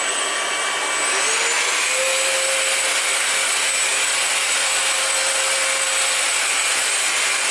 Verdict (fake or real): real